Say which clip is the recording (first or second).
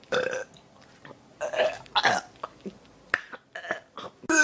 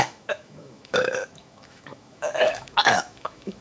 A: first